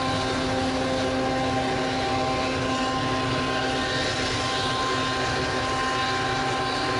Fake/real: real